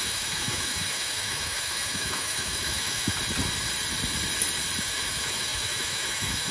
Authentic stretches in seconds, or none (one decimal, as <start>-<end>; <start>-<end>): 3.1-4.8